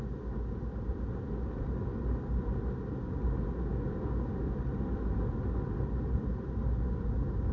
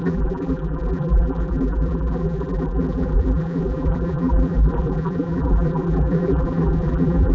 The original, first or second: first